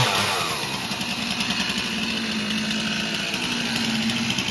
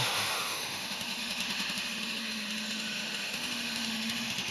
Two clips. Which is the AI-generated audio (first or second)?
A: second